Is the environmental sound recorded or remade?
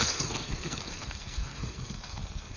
remade